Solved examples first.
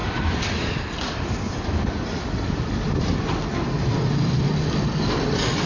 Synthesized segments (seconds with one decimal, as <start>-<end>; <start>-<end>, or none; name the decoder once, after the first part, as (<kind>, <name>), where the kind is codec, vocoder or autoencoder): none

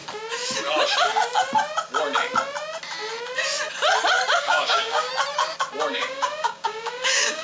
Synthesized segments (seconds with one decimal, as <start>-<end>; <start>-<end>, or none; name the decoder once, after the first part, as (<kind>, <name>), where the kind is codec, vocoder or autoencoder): 4.4-5.1 (codec, DAC); 5.9-7.4

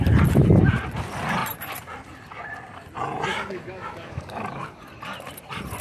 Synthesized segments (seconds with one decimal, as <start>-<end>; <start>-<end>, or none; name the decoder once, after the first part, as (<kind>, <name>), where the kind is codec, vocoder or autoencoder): 3.3-4.9 (codec, DAC)

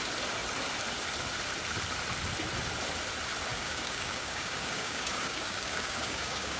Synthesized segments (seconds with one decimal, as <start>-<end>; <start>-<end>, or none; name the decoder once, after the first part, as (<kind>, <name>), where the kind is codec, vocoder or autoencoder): 3.5-6.6 (codec, DAC)

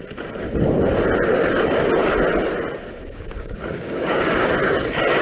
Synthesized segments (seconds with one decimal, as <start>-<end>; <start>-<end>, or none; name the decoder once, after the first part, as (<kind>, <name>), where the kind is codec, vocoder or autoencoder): 3.0-4.5 (codec, DAC)

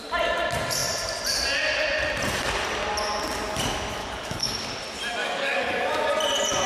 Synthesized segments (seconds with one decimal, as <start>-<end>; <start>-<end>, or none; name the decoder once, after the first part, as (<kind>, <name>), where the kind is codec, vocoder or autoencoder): 4.0-4.7 (codec, DAC); 5.2-5.9

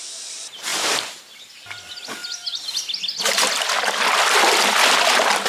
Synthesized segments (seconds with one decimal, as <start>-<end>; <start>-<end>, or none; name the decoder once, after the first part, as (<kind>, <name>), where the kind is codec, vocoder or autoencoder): none

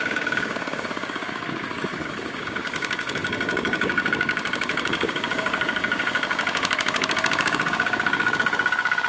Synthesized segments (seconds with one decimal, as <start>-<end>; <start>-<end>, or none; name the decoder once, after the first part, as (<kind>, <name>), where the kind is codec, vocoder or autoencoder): 0.0-9.1 (codec, DAC)